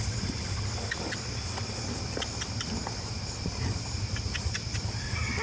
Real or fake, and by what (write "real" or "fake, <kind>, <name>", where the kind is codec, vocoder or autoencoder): real